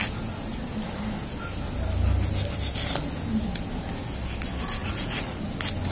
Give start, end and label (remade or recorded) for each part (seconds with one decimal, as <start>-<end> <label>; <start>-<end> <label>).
0.0-4.8 recorded; 4.8-5.4 remade; 5.4-5.9 recorded

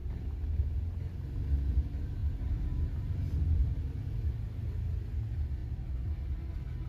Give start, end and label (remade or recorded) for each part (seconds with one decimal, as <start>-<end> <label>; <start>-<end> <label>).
0.0-6.9 recorded

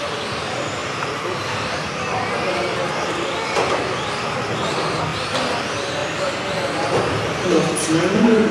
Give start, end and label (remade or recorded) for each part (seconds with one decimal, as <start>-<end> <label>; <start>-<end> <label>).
0.0-0.8 recorded; 0.8-4.3 remade; 4.3-8.5 recorded

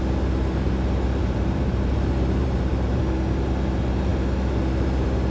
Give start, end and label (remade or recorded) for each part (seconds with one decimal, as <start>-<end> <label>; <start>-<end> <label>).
0.0-1.2 recorded; 1.2-3.0 remade; 3.0-5.3 recorded

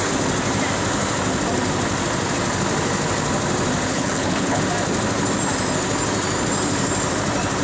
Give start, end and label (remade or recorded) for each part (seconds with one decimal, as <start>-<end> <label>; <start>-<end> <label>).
0.0-3.9 recorded; 3.9-4.6 remade; 4.6-7.6 recorded

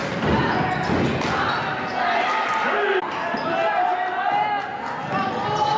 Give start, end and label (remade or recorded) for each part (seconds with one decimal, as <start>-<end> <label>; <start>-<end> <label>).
0.0-5.8 recorded